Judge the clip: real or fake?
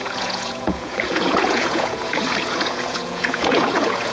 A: fake